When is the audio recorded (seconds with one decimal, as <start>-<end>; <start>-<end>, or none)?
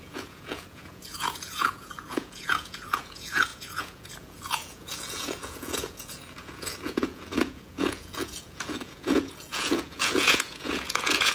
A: none